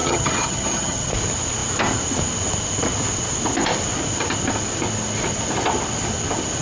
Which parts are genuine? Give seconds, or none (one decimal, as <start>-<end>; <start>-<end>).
1.1-6.6